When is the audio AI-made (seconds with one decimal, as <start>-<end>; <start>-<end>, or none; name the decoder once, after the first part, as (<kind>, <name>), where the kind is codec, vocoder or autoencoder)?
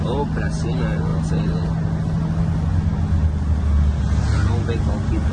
none